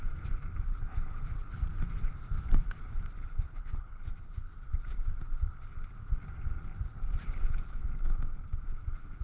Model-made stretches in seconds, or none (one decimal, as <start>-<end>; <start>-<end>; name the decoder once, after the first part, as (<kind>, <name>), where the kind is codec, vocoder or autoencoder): 0.7-1.6 (codec, HILCodec); 3.2-4.1

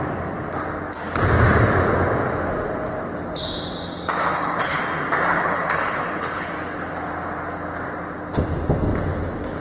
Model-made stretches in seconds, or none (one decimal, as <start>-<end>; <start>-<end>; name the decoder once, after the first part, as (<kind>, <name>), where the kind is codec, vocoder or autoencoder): 4.3-4.8 (codec, HILCodec); 5.3-6.5

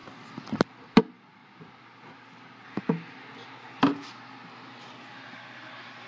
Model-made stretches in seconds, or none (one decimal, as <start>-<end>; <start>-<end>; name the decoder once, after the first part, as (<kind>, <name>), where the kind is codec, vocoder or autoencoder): none

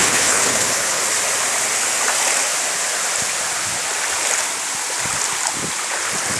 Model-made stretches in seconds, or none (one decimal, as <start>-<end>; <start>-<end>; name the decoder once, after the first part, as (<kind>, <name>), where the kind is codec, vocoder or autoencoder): 0.0-1.0 (codec, HILCodec)

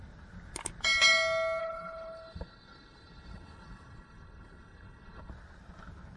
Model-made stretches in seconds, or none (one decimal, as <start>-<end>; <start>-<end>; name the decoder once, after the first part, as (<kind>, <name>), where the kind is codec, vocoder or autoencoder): 1.6-5.3 (codec, HILCodec)